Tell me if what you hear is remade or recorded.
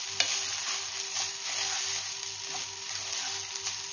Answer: recorded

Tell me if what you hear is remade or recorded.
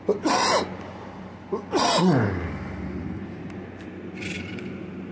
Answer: recorded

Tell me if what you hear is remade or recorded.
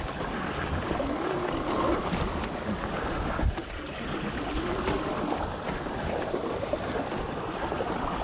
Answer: recorded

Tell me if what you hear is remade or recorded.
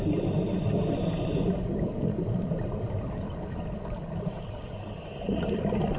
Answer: recorded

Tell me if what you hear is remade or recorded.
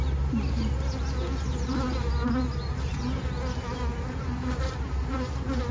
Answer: recorded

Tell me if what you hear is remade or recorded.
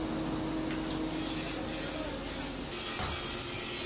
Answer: recorded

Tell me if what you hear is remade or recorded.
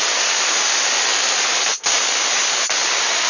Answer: recorded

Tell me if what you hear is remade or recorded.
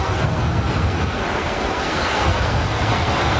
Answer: remade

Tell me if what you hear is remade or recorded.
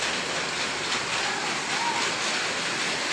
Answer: recorded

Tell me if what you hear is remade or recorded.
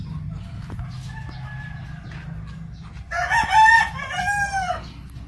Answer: recorded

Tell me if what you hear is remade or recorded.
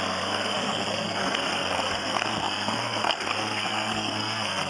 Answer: remade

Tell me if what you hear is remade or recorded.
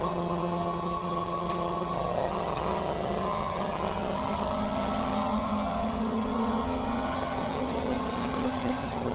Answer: remade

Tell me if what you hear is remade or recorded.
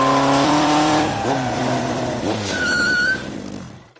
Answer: remade